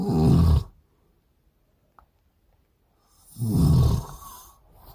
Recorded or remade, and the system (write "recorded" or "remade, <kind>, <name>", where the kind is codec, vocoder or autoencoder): recorded